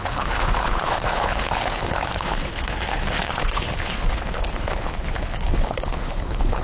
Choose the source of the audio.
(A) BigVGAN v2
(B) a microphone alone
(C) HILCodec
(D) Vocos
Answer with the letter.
C